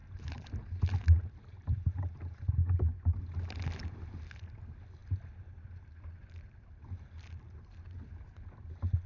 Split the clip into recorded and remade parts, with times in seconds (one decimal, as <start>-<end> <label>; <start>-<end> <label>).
0.0-2.5 remade; 2.5-9.1 recorded